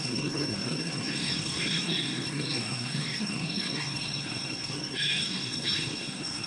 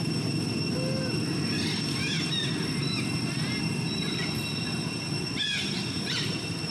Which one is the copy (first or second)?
first